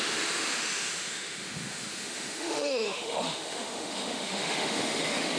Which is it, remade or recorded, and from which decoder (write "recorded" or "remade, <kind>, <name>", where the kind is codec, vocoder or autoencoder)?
remade, autoencoder, DAC-VAE